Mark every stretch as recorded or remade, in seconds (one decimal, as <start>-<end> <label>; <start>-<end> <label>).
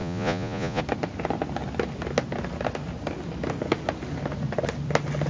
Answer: 0.0-0.8 remade; 0.8-5.3 recorded